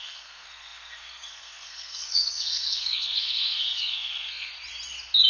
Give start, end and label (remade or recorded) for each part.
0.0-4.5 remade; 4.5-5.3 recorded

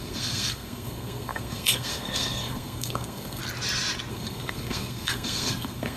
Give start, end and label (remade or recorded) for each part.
0.0-3.4 remade; 3.4-4.1 recorded; 4.1-6.0 remade

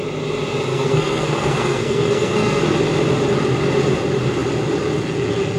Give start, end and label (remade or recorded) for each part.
0.0-0.7 recorded; 0.7-2.6 remade; 2.6-5.6 recorded

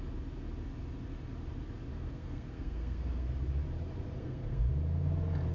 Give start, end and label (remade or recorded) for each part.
0.0-1.9 recorded; 1.9-3.3 remade; 3.3-4.2 recorded; 4.2-4.7 remade; 4.7-5.5 recorded